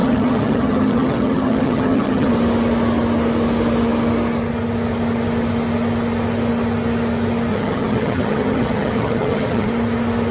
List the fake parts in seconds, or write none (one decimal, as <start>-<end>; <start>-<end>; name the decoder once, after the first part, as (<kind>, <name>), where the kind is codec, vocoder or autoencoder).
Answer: 0.0-2.3 (vocoder, HiFi-GAN); 7.5-9.7